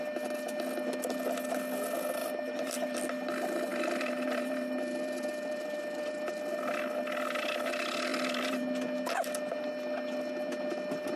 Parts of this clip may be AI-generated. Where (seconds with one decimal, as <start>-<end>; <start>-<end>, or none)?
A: 2.2-3.0; 3.7-6.3; 8.1-8.6